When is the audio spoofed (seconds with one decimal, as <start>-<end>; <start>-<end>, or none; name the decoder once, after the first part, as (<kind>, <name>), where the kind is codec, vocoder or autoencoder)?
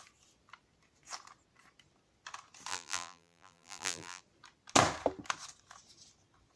2.7-4.2 (vocoder, BigVGAN v2)